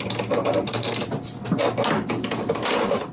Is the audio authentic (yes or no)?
yes